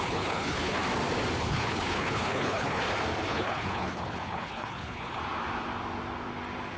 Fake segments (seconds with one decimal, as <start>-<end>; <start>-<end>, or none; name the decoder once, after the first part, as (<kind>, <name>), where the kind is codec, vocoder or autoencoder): 0.0-0.8 (codec, HILCodec); 1.4-2.8; 3.3-5.2